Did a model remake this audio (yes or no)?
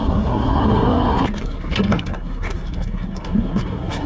yes